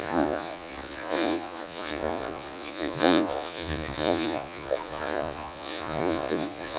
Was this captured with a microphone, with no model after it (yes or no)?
no